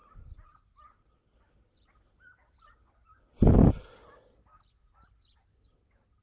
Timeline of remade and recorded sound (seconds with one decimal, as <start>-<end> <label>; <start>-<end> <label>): 0.0-6.2 recorded